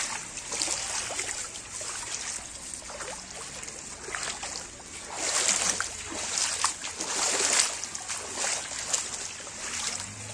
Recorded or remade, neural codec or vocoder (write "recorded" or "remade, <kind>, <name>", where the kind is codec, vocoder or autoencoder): recorded